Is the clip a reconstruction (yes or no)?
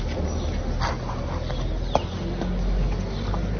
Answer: no